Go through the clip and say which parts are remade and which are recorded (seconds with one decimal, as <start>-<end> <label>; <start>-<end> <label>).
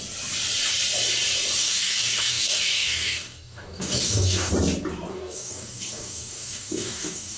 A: 0.0-1.6 recorded; 1.6-4.5 remade; 4.5-5.1 recorded; 5.1-7.4 remade